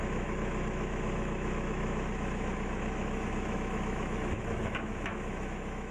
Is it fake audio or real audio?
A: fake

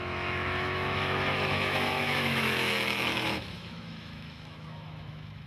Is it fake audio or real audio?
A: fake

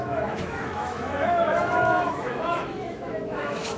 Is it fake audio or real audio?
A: fake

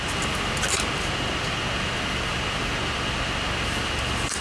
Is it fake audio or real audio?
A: real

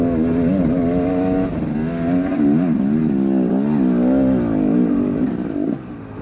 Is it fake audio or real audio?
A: real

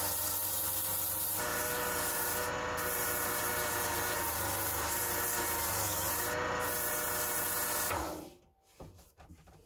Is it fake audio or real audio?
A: real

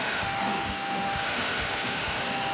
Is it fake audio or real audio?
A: fake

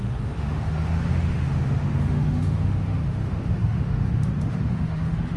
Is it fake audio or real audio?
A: fake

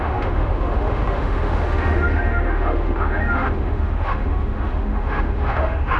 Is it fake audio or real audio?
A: fake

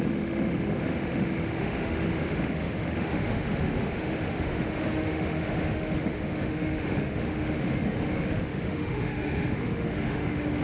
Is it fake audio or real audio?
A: fake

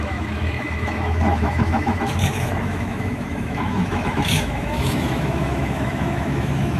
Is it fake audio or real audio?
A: fake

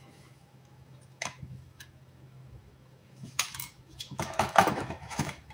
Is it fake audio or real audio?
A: fake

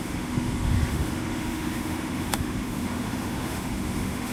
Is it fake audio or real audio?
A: fake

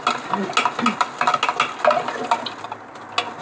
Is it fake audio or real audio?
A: real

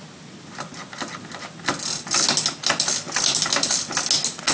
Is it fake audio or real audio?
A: real